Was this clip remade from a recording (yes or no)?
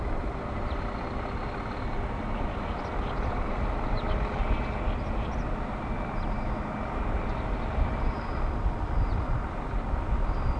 no